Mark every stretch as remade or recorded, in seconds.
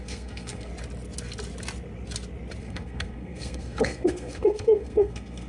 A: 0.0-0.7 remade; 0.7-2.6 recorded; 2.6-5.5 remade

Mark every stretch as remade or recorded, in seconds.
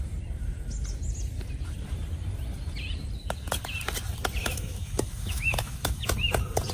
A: 0.0-4.4 recorded; 4.4-6.0 remade; 6.0-6.7 recorded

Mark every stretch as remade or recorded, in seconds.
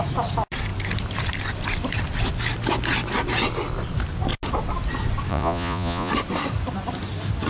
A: 0.0-5.3 recorded; 5.3-6.1 remade; 6.1-7.5 recorded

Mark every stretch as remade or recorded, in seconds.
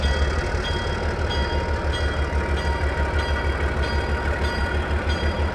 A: 0.0-5.5 recorded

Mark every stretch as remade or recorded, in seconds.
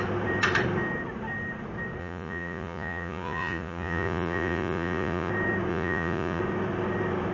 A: 0.0-2.0 recorded; 2.0-5.3 remade; 5.3-5.7 recorded; 5.7-6.4 remade; 6.4-7.3 recorded